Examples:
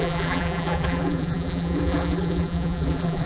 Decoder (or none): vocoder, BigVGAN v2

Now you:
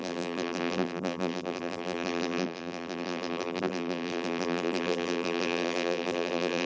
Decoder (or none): vocoder, BigVGAN v2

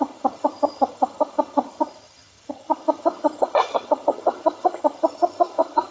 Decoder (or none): vocoder, HiFi-GAN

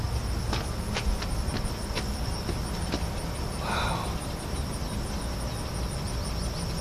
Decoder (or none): none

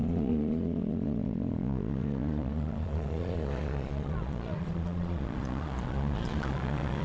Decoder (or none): vocoder, Vocos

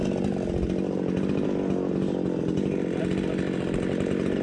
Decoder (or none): none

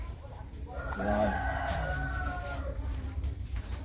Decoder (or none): vocoder, BigVGAN v2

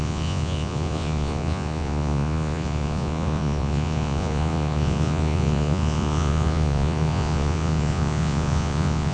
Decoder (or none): vocoder, Vocos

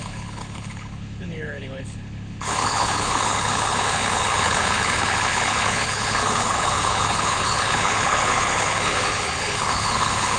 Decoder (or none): codec, HILCodec